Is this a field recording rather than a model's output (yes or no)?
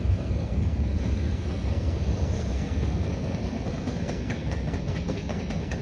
no